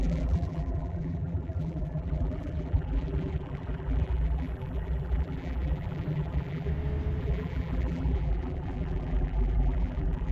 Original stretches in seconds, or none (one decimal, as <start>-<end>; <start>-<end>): 6.7-7.2